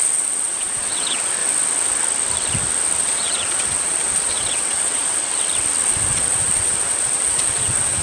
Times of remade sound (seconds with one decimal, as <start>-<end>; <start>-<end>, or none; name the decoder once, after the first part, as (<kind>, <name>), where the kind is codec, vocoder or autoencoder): 0.0-1.4 (vocoder, WaveNeXt); 3.0-5.2; 5.8-8.0